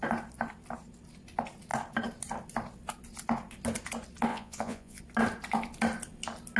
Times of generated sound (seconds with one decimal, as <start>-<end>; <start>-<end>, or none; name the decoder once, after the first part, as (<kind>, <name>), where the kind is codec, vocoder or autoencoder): 4.3-5.0 (vocoder, Vocos)